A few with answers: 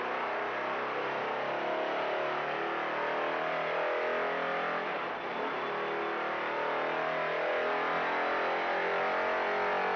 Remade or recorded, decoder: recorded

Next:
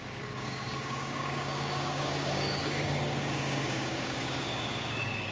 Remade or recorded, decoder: remade, codec, DAC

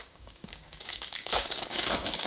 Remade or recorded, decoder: remade, codec, DAC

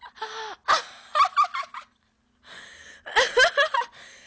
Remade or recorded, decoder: recorded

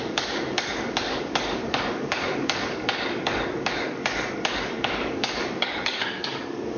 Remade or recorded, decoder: remade, codec, DAC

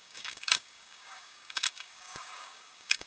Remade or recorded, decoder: remade, codec, DAC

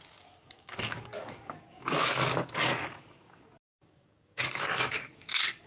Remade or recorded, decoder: remade, codec, DAC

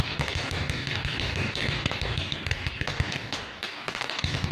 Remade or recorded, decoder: remade, codec, DAC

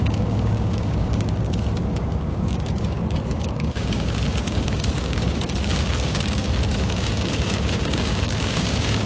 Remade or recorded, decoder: remade, codec, DAC